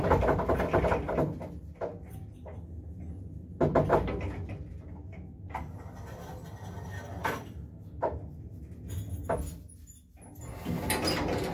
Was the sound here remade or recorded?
recorded